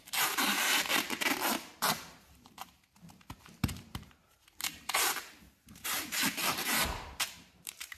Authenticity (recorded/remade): remade